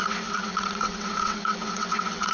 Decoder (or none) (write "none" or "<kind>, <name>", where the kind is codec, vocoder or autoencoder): vocoder, WaveNeXt